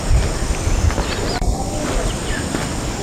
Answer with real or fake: real